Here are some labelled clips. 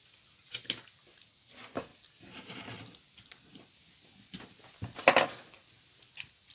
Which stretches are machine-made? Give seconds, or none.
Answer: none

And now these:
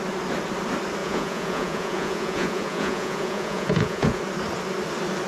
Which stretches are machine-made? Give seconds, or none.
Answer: 1.0-4.2 (vocoder, Vocos)

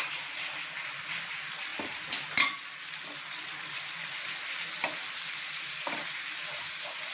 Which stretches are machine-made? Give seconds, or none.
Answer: none

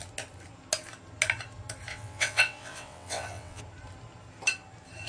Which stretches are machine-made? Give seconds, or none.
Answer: 1.9-3.6 (vocoder, WaveNeXt)

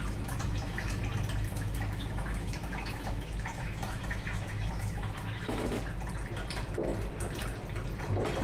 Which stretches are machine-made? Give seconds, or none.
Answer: 0.0-1.0 (autoencoder, DAC-VAE); 1.5-5.8

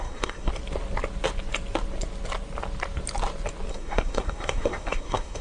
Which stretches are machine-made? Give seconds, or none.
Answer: 0.0-0.5 (codec, SNAC); 3.7-5.4

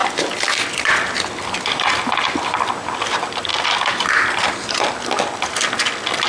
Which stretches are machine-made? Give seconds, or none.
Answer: 0.0-2.7 (vocoder, BigVGAN v2); 3.5-4.9